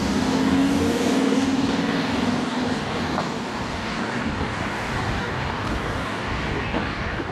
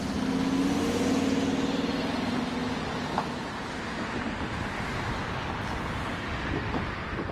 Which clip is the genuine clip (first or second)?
second